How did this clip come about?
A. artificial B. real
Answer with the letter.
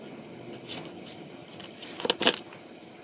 B